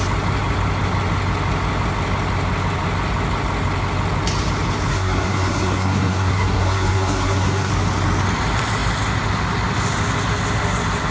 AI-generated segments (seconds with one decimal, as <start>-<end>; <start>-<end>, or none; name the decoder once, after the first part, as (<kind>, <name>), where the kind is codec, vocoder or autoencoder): 4.9-7.7 (codec, SNAC)

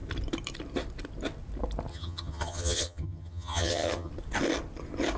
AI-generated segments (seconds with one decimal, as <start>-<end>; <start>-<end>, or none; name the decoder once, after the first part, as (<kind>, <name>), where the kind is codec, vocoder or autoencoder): 1.9-4.1 (vocoder, HiFi-GAN)

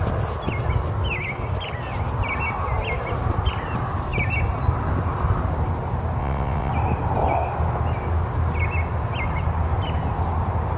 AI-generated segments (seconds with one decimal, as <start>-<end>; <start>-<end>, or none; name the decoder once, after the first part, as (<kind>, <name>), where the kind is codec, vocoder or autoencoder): 6.2-6.7 (vocoder, WaveNeXt)

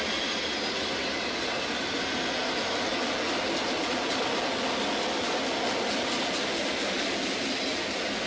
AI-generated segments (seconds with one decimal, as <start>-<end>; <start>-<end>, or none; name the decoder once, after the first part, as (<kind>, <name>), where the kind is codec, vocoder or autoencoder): none

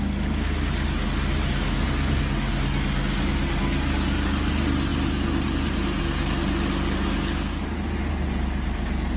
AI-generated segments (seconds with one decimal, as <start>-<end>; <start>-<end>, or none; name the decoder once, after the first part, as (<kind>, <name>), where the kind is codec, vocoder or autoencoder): none

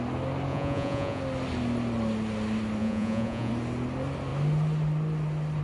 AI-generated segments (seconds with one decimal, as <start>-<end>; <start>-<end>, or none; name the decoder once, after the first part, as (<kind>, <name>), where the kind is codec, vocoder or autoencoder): 0.5-1.2 (vocoder, Vocos); 2.8-3.5